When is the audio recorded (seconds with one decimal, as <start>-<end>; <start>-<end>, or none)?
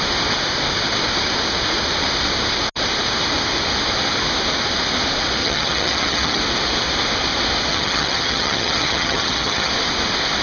0.0-5.4; 6.4-7.7; 9.7-10.4